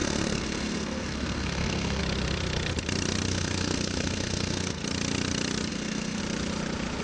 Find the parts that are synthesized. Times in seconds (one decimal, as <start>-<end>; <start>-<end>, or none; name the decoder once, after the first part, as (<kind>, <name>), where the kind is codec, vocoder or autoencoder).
0.0-2.0 (codec, SNAC); 3.3-4.8; 5.7-6.2